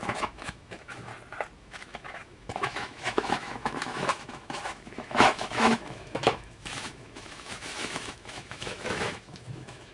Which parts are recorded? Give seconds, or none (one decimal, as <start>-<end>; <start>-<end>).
1.1-1.6